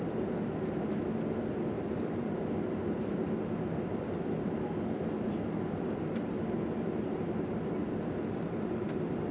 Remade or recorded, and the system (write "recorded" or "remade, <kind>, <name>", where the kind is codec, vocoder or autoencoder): recorded